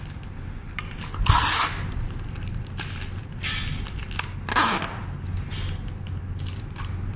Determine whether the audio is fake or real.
real